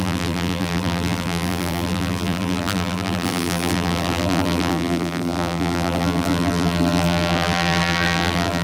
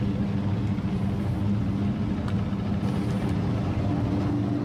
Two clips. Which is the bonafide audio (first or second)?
second